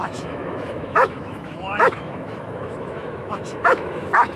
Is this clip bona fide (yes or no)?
no